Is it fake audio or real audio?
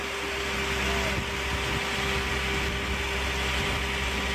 real